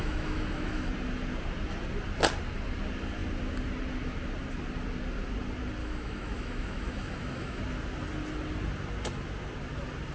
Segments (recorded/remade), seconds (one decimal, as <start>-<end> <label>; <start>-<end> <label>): 0.0-0.9 remade; 0.9-5.8 recorded; 5.8-7.6 remade; 7.6-10.1 recorded